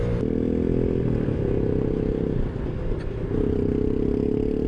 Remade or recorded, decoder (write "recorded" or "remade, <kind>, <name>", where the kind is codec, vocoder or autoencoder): recorded